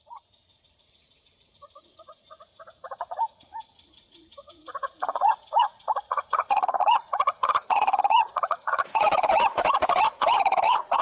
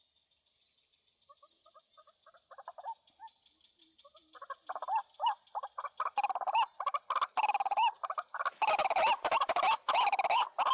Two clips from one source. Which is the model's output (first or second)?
first